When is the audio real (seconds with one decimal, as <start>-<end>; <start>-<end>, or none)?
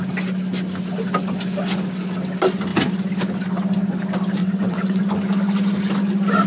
0.0-4.4; 5.0-6.5